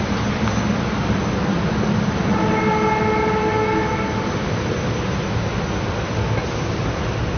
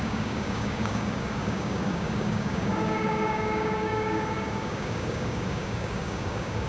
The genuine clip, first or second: first